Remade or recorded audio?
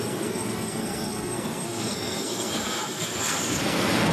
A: remade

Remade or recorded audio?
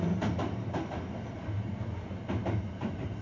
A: recorded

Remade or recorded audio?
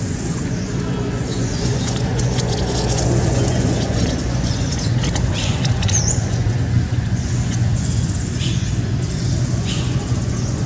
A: remade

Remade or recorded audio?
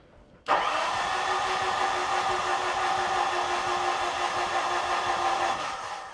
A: recorded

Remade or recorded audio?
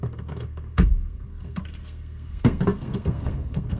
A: remade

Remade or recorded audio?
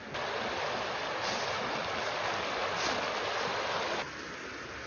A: recorded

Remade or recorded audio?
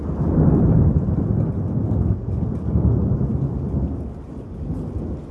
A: recorded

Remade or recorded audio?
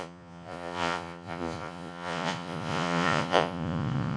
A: remade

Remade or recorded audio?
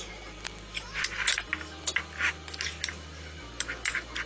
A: recorded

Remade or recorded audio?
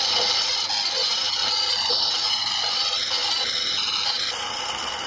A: recorded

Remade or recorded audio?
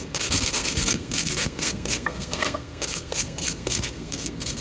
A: remade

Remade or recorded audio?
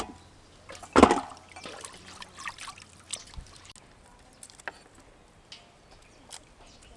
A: recorded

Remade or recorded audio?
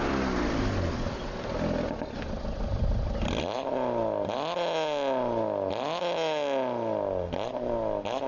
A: recorded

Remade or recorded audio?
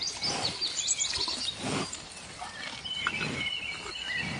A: remade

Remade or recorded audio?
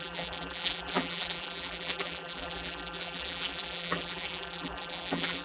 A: remade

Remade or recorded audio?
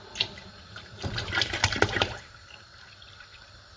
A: remade